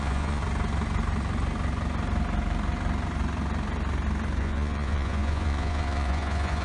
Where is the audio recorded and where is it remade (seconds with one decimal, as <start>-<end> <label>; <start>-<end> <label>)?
0.0-0.4 remade; 0.4-4.4 recorded; 4.4-6.6 remade